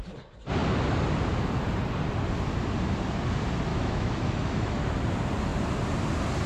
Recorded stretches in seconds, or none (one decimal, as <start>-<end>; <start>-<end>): 0.0-3.7; 4.8-6.5